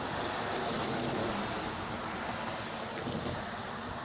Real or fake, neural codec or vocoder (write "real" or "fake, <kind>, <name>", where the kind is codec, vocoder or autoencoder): real